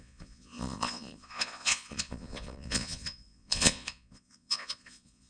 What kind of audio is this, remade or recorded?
remade